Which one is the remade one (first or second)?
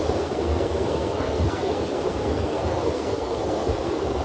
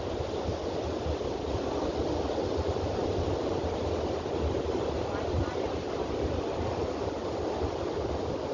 first